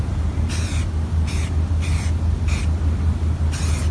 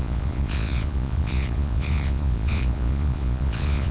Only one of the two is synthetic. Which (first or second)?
second